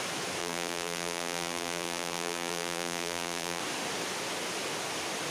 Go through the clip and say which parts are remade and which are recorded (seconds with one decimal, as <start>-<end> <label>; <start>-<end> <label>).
0.0-0.4 recorded; 0.4-3.6 remade; 3.6-5.3 recorded